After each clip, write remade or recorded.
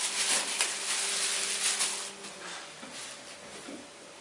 recorded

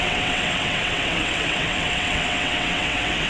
remade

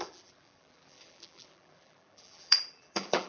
remade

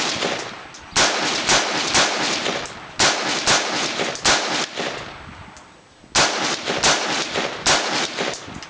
recorded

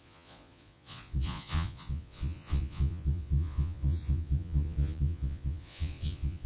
remade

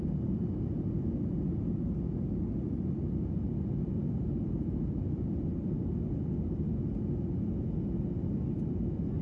recorded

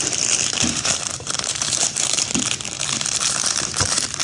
remade